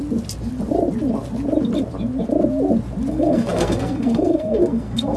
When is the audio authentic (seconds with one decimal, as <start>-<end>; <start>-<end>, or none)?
0.0-3.1